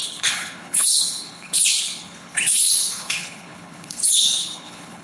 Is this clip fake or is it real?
fake